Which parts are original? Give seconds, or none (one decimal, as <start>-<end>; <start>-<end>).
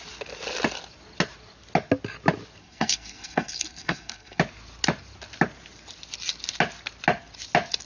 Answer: 0.0-2.6; 4.4-7.9